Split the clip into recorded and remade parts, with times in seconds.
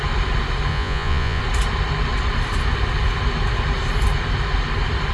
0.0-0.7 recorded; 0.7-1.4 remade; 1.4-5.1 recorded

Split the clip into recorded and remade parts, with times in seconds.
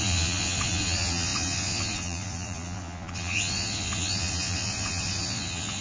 0.0-5.8 remade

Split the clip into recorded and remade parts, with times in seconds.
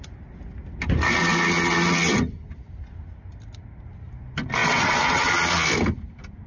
0.0-4.6 recorded; 4.6-5.3 remade; 5.3-6.5 recorded